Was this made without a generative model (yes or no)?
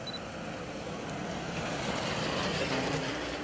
yes